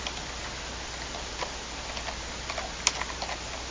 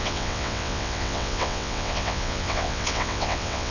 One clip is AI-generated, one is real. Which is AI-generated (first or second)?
second